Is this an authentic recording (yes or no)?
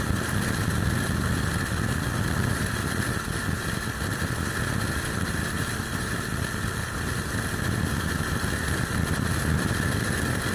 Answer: yes